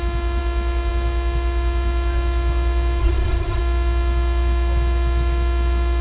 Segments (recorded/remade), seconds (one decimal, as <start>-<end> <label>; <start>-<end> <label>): 0.0-3.0 recorded; 3.0-3.6 remade; 3.6-6.0 recorded